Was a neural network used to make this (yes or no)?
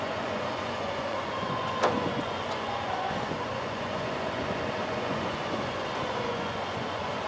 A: yes